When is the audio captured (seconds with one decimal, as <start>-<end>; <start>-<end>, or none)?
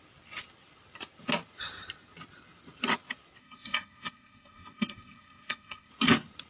0.0-3.4; 5.9-6.5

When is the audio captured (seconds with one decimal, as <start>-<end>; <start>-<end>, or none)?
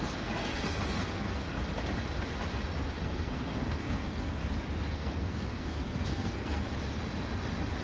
1.5-3.0; 4.4-4.9; 6.7-7.8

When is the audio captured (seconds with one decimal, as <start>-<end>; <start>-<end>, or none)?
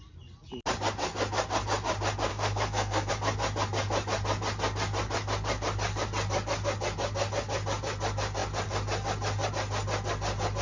0.0-2.3; 3.1-10.6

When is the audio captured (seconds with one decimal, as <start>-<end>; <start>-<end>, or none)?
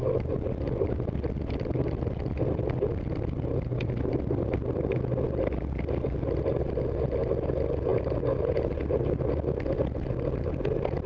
0.0-11.1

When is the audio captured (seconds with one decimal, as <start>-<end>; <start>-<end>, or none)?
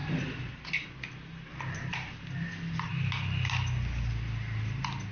0.0-5.1